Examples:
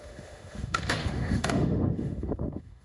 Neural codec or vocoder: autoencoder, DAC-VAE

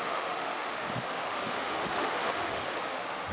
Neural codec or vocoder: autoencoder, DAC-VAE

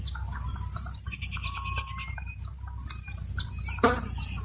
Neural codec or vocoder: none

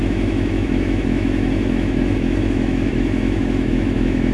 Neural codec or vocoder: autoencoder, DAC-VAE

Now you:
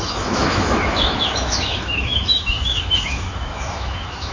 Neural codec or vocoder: autoencoder, DAC-VAE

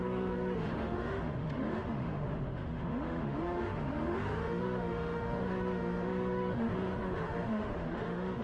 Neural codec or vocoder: autoencoder, DAC-VAE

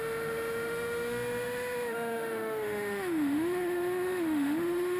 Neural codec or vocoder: autoencoder, DAC-VAE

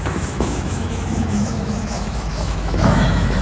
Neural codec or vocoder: autoencoder, DAC-VAE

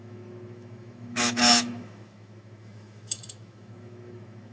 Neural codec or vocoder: autoencoder, DAC-VAE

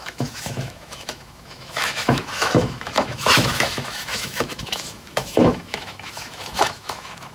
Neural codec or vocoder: autoencoder, DAC-VAE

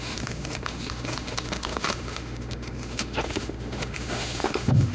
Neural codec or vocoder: autoencoder, DAC-VAE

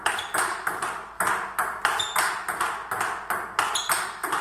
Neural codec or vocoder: none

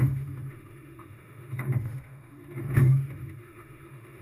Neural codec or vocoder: autoencoder, DAC-VAE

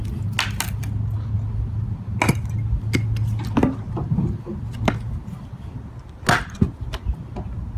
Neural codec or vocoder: none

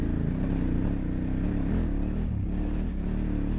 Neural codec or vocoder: none